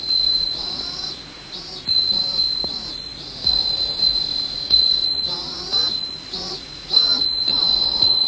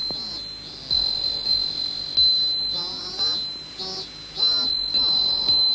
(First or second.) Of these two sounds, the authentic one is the second